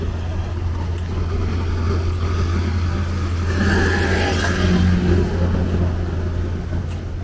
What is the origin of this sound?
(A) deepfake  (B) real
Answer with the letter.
B